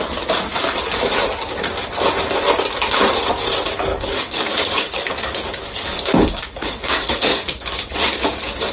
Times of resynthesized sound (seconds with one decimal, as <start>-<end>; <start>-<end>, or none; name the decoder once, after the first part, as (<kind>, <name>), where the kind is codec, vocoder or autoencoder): 3.9-8.7 (codec, DAC)